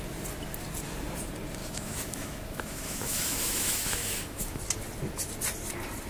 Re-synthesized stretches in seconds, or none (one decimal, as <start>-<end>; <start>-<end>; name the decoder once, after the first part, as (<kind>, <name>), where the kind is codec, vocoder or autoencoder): 1.6-4.6 (autoencoder, DAC-VAE)